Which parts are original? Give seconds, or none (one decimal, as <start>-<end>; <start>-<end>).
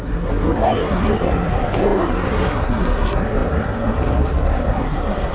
none